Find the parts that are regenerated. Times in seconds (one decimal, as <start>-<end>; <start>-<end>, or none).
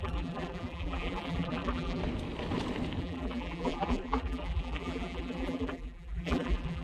0.0-2.0; 3.0-6.8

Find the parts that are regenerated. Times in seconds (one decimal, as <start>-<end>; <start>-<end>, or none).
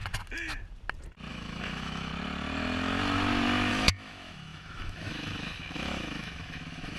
1.3-2.1; 3.7-7.0